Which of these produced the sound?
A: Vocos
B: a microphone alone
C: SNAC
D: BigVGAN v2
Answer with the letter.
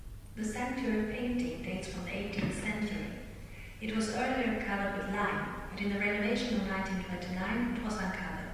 B